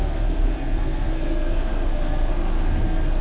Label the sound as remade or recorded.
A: remade